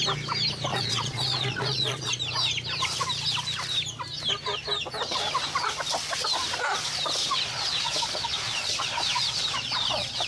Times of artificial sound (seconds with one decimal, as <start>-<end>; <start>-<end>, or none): 0.7-2.1; 7.2-10.3